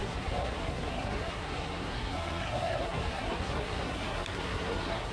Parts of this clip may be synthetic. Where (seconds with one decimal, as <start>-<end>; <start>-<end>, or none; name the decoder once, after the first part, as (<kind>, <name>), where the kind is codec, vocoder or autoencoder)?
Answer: 0.0-5.1 (codec, SNAC)